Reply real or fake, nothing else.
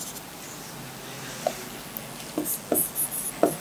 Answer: real